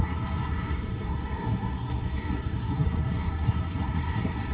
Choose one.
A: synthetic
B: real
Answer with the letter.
A